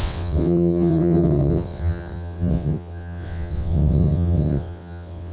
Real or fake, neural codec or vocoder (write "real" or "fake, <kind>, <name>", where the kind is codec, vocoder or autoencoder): fake, vocoder, WaveNeXt